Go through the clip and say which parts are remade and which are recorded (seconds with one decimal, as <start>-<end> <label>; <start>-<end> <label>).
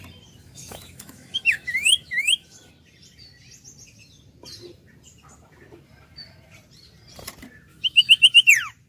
0.0-0.4 recorded; 0.4-2.7 remade; 2.7-7.7 recorded; 7.7-8.5 remade; 8.5-8.9 recorded